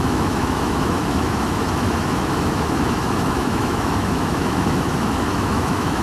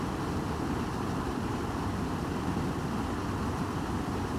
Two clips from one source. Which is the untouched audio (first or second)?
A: second